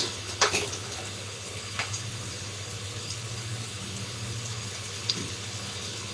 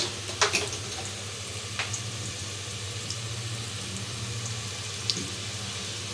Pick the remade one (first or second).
first